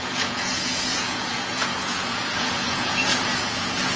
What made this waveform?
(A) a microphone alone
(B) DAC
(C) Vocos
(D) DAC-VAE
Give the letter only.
C